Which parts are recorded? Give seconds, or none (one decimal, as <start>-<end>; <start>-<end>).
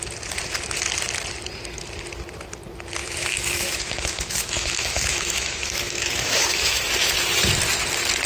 0.0-3.0; 6.9-8.3